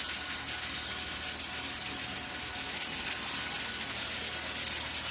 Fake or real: real